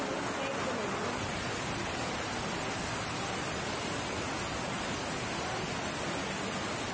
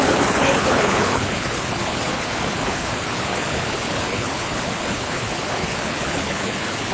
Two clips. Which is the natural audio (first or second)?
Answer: first